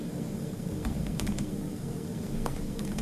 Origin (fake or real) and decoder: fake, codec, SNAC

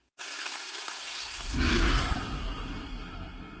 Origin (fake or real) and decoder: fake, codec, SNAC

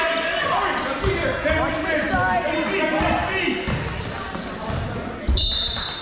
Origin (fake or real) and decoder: real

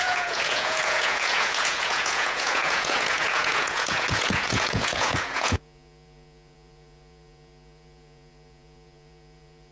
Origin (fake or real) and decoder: fake, vocoder, Vocos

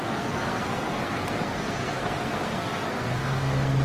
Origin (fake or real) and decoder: fake, codec, SNAC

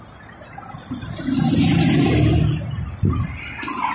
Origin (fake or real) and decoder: real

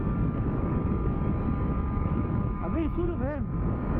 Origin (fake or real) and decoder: fake, codec, DAC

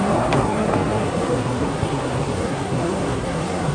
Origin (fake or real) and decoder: fake, codec, SNAC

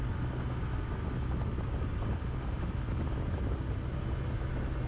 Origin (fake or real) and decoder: real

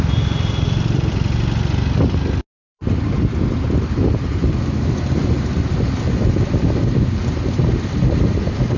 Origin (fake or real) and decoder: real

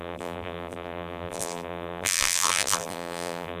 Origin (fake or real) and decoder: fake, vocoder, BigVGAN v2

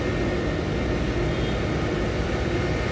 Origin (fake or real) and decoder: real